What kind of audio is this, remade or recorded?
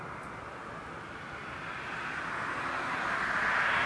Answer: recorded